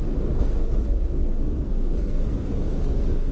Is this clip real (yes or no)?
no